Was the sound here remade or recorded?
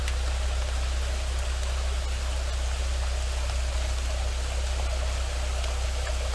recorded